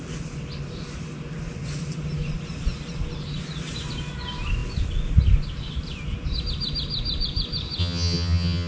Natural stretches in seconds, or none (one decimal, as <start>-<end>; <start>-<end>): 0.0-7.8